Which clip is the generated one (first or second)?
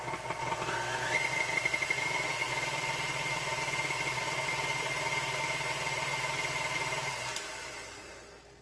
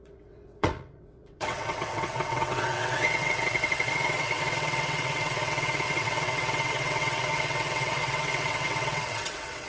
second